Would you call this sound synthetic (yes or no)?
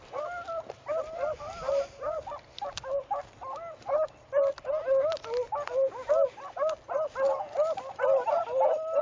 no